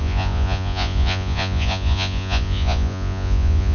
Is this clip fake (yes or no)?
yes